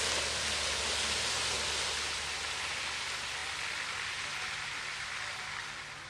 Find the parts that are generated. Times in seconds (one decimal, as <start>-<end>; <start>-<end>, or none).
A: none